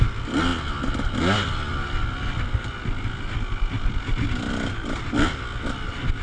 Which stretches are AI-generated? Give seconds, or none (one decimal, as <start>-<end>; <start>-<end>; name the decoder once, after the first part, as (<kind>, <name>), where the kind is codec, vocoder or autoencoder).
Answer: none